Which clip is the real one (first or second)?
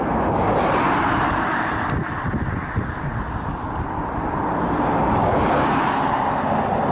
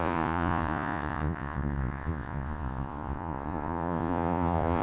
first